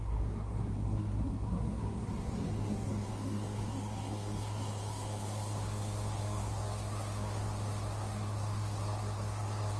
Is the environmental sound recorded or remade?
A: remade